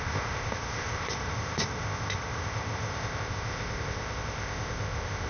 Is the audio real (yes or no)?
no